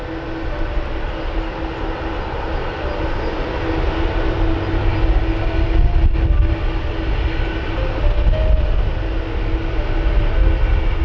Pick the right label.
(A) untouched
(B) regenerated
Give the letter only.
A